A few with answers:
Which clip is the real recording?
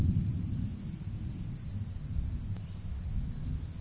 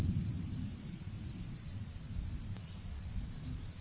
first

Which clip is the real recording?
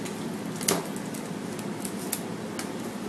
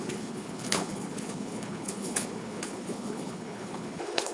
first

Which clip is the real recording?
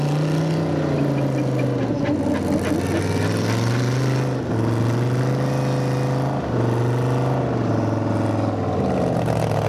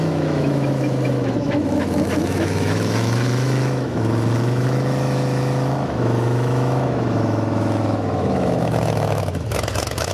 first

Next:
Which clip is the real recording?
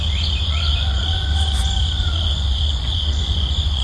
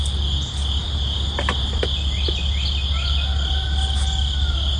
second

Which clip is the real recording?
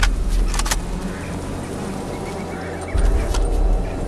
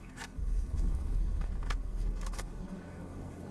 first